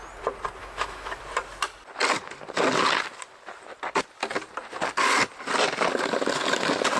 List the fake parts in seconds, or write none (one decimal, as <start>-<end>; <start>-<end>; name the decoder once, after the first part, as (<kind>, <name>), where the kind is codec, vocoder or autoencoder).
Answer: 0.6-1.2 (autoencoder, DAC-VAE)